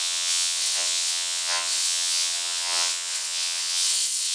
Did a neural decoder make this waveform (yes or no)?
yes